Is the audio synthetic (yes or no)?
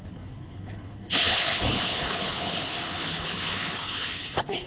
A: yes